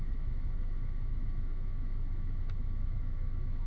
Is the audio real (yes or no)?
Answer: no